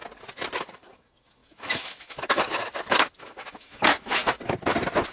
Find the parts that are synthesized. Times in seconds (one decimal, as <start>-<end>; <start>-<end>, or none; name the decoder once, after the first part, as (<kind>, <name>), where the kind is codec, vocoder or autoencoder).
0.6-4.2 (autoencoder, DAC-VAE)